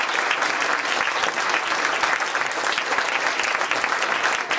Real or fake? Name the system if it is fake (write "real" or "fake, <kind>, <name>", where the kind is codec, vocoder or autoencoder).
real